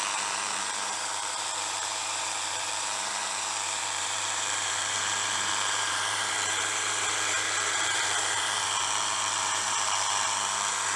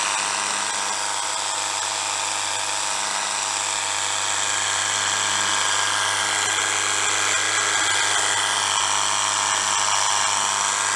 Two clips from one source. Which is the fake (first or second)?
first